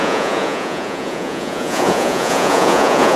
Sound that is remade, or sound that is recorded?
remade